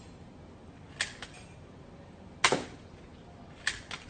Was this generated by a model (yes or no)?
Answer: no